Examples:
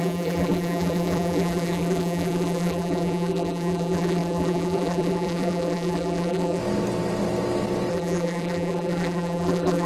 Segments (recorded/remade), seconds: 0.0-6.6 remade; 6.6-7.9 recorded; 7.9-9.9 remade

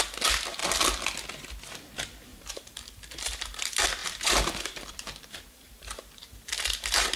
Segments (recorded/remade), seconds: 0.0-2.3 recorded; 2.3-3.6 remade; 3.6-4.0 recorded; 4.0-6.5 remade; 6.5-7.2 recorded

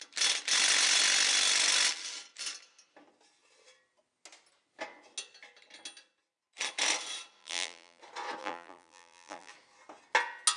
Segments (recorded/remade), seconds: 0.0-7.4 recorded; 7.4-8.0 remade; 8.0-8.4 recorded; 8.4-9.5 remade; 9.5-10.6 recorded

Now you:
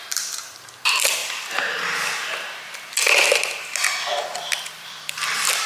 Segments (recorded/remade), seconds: 0.0-1.2 remade; 1.2-4.6 recorded; 4.6-5.7 remade

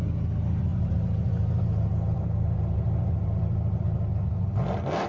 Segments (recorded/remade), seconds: 0.0-0.7 recorded; 0.7-3.8 remade; 3.8-5.1 recorded

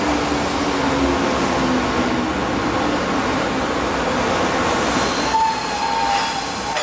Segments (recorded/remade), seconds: 0.0-6.8 recorded

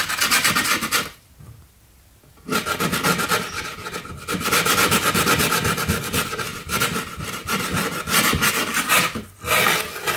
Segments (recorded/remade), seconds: 0.0-6.5 recorded; 6.5-9.4 remade; 9.4-10.2 recorded